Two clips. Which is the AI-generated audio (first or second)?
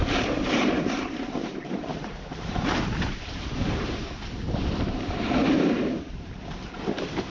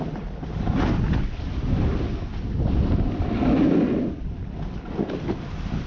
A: first